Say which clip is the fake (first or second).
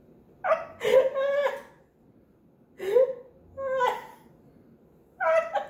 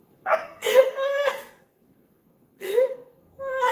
second